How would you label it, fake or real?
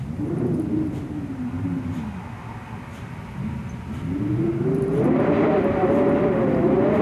real